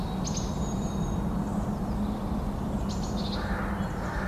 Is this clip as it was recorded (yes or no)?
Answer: yes